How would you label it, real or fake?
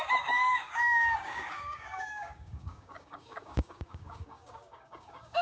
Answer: fake